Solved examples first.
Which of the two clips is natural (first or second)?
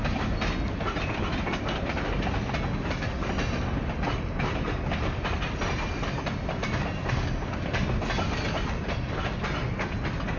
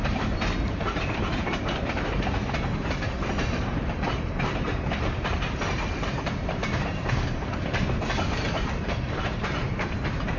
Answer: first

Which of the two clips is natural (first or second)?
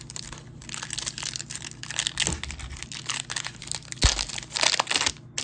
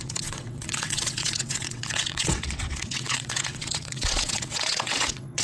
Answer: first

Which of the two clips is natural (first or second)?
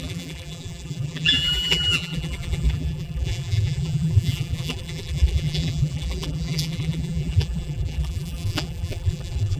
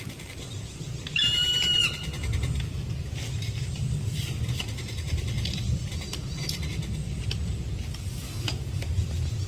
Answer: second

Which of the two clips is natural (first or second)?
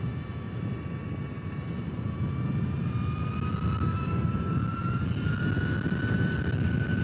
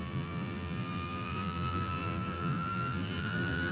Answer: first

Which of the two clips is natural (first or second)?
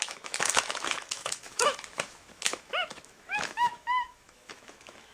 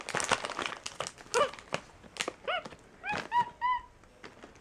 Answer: second